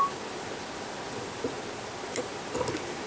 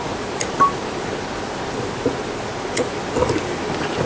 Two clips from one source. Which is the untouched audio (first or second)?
second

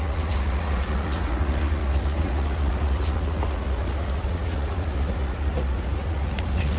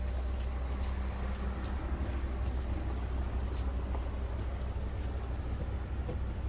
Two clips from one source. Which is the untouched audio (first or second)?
second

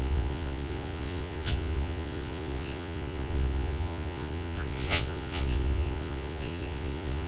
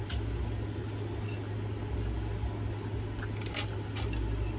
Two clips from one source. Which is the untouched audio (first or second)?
second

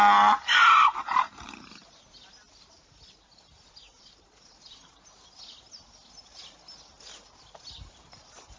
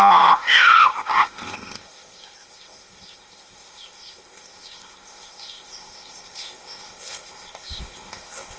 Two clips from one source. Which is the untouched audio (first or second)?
first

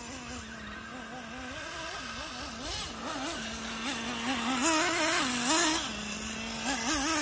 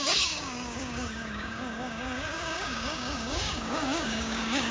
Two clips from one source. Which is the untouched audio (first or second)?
first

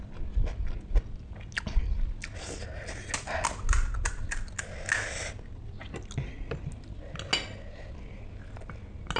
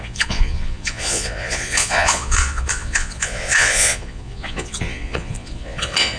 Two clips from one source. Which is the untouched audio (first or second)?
first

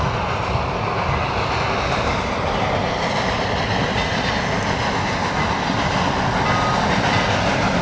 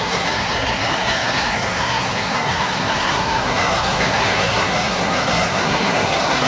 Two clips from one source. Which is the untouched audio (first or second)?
first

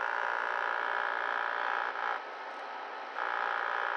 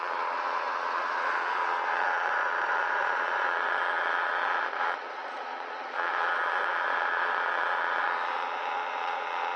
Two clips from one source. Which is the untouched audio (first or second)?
first